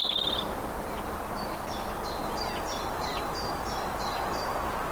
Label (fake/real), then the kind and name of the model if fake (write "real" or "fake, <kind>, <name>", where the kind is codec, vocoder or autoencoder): real